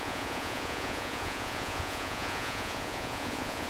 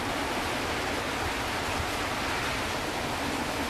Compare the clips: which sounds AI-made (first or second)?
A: first